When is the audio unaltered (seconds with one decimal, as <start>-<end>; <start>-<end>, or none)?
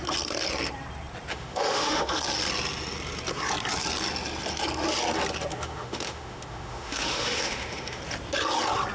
0.0-1.3; 2.1-5.5; 8.0-8.9